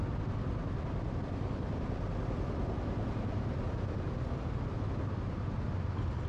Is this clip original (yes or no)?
yes